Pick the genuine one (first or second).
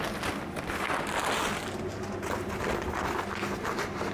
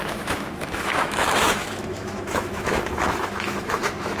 first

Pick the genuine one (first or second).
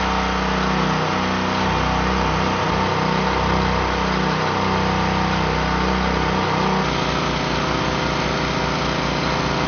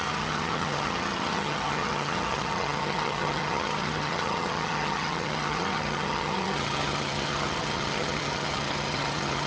first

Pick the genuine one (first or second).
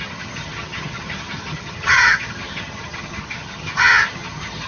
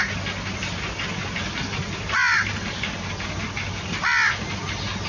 second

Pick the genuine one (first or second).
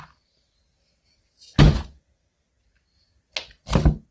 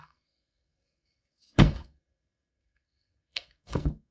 first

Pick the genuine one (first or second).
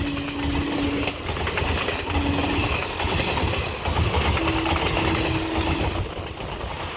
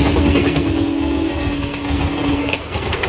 first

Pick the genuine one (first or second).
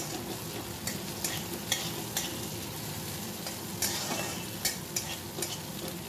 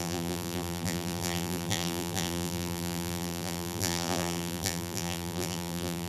first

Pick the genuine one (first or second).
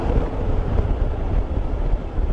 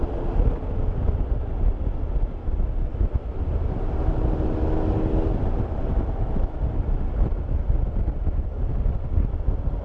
second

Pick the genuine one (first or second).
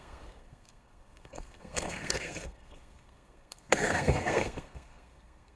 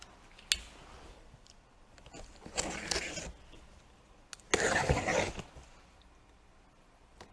second